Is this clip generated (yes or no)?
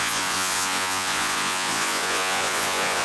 yes